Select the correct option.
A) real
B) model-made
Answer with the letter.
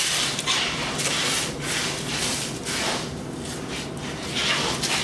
A